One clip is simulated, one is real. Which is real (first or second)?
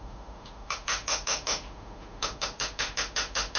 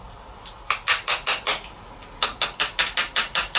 second